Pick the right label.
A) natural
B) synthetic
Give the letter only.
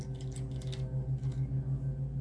A